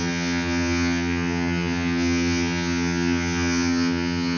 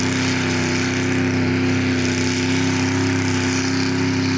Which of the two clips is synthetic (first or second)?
first